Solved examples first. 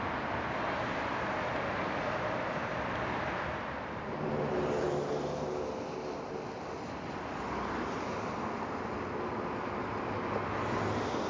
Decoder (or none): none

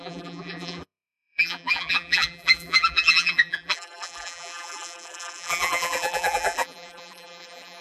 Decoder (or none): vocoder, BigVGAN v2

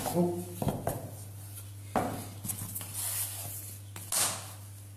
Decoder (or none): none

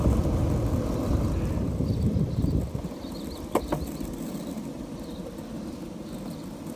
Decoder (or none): none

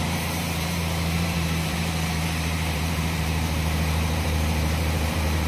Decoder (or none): vocoder, BigVGAN v2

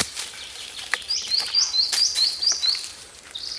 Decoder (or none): vocoder, BigVGAN v2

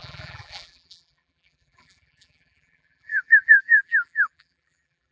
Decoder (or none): vocoder, BigVGAN v2